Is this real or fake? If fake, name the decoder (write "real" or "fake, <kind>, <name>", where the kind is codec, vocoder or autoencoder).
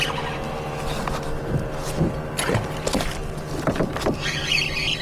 real